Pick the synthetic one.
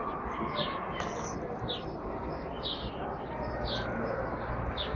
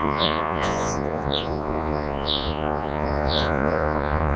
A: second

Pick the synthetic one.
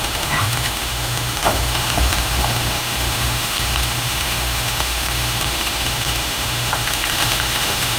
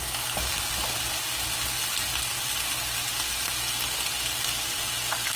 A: first